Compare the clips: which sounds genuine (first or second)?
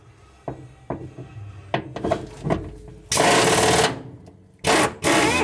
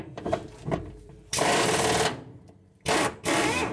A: first